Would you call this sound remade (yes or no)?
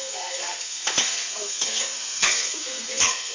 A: yes